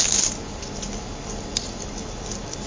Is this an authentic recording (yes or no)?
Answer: yes